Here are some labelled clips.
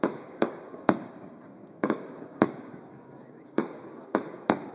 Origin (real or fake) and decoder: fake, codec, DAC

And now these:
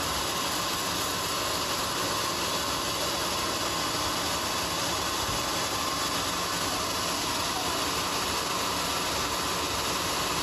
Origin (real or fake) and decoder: real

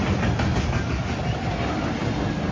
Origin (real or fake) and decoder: real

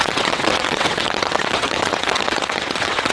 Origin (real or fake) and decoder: fake, vocoder, WaveNeXt